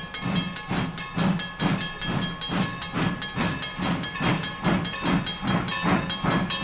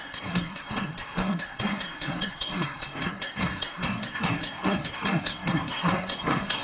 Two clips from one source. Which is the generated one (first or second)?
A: second